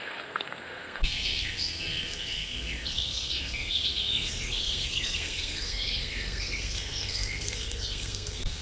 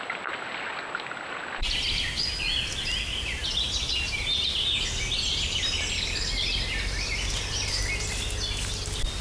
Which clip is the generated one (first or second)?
first